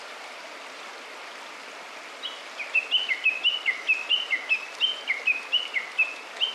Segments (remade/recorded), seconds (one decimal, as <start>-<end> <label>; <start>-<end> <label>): 0.0-6.5 recorded